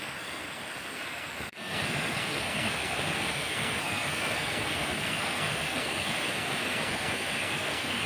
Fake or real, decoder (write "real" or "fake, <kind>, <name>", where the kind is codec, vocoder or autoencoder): fake, codec, SNAC